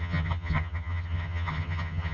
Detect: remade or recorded remade